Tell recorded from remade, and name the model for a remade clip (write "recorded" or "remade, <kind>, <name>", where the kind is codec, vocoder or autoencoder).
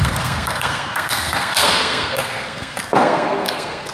remade, codec, SNAC